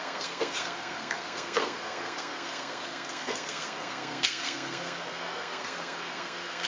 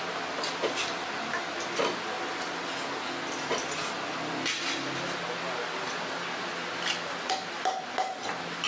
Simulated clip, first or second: first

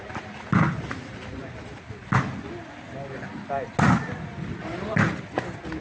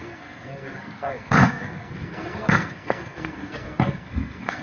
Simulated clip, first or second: second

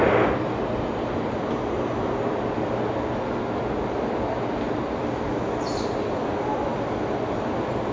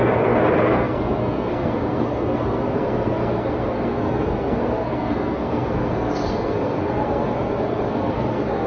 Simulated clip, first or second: second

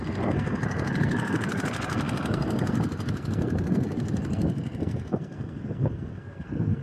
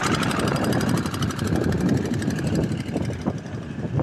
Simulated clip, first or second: first